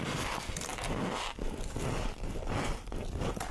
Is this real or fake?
real